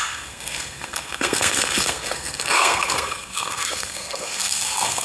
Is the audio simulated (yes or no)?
yes